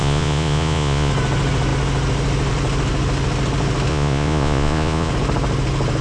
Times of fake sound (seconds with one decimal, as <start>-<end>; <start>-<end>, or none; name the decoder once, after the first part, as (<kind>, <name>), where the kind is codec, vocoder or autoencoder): 0.0-1.1 (vocoder, Vocos); 3.9-5.1